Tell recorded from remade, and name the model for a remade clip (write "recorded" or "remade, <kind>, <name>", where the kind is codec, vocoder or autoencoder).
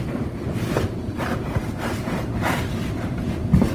remade, vocoder, BigVGAN v2